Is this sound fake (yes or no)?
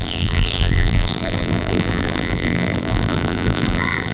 yes